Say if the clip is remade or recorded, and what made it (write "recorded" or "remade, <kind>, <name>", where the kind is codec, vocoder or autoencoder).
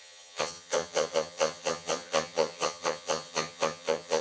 remade, vocoder, HiFi-GAN